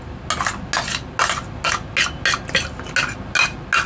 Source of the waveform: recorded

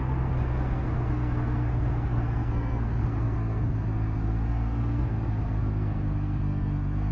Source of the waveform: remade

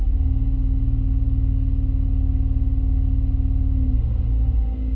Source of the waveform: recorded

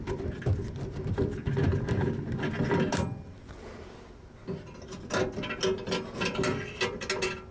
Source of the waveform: recorded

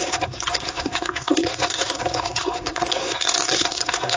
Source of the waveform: remade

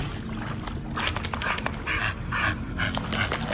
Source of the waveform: recorded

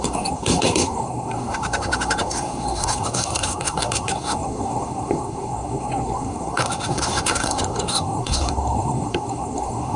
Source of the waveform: remade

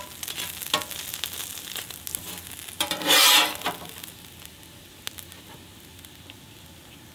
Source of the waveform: recorded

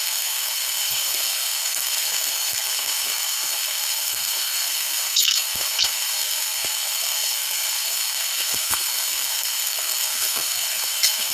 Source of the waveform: remade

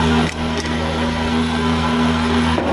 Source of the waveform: remade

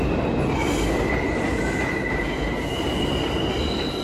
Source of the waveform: recorded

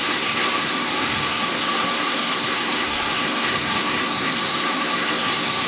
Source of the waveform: remade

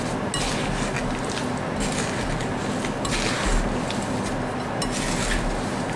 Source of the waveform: recorded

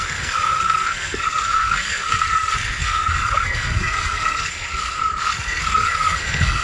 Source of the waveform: remade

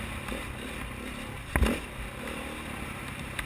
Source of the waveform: recorded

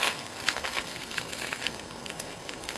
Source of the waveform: remade